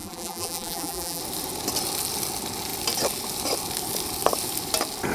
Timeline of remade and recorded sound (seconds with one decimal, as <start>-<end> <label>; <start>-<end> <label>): 0.0-1.2 remade; 1.2-5.1 recorded